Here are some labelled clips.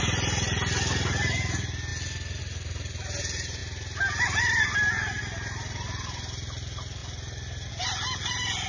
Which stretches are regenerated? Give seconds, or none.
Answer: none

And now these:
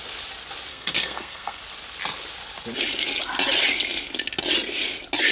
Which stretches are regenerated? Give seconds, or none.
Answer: 0.7-1.6 (codec, SNAC)